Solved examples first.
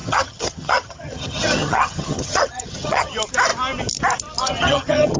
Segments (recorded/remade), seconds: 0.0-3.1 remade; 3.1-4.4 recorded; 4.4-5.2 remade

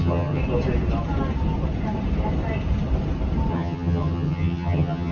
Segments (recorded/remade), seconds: 0.0-0.4 remade; 0.4-3.5 recorded; 3.5-5.1 remade

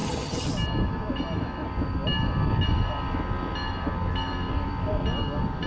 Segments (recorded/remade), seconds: 0.0-0.5 remade; 0.5-5.7 recorded

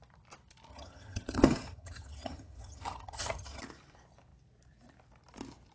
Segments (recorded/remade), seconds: 0.0-0.7 recorded; 0.7-3.6 remade; 3.6-5.7 recorded

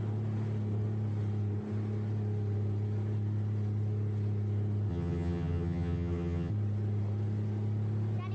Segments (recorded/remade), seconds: 0.0-4.9 recorded; 4.9-6.5 remade; 6.5-8.3 recorded

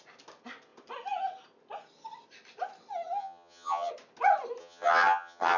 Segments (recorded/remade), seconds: 0.0-3.2 recorded; 3.2-3.9 remade; 3.9-4.6 recorded; 4.6-5.6 remade